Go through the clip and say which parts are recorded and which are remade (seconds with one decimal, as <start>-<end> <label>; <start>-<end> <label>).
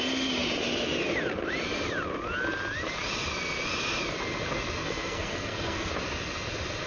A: 0.0-4.8 recorded; 4.8-5.9 remade; 5.9-6.9 recorded